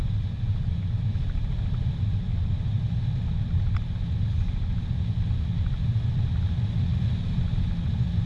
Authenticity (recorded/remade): recorded